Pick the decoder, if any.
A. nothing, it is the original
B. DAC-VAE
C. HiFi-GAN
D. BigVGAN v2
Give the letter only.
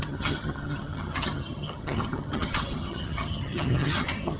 C